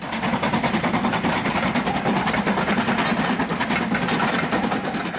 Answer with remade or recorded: recorded